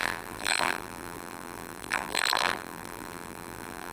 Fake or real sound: fake